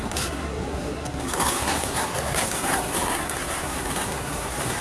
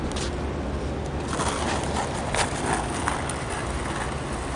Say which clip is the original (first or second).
second